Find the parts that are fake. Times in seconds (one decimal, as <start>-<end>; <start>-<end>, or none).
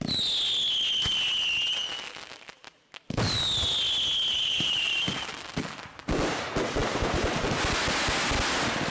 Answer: 4.3-5.1; 6.8-7.4